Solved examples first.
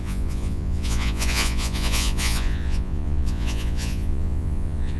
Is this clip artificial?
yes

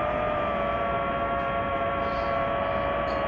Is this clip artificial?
no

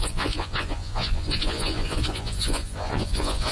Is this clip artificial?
yes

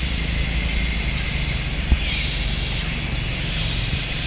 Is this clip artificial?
no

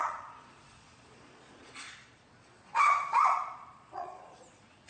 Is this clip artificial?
yes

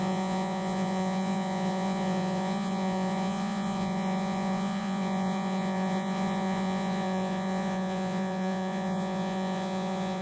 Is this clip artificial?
yes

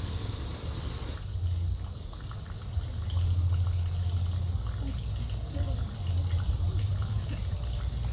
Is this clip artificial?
no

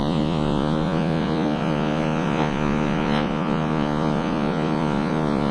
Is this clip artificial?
yes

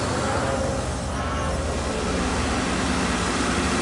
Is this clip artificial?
no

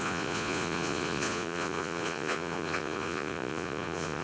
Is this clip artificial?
yes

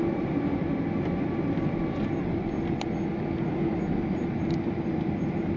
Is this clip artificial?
no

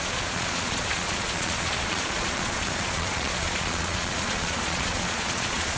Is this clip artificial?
yes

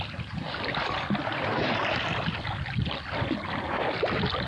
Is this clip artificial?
no